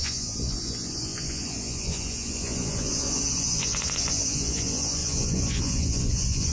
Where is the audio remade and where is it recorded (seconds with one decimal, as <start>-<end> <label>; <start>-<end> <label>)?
0.0-6.5 remade